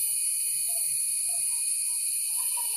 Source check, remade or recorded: recorded